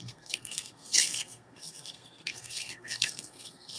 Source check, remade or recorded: remade